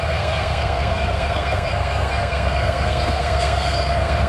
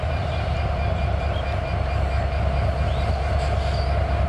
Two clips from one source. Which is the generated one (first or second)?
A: first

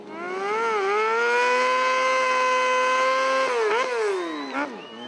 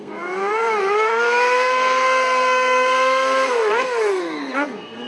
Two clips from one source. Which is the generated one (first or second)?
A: second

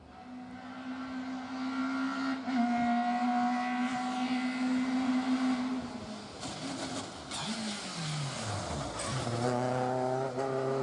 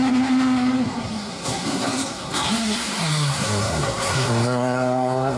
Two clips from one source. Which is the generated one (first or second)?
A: second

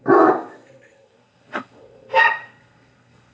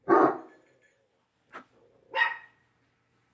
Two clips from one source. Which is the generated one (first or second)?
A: first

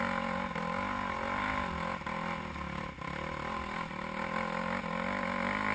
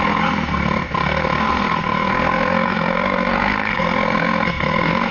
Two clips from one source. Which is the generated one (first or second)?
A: second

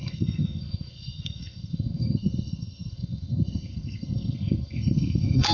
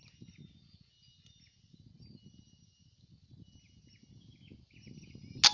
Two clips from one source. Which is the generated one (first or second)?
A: first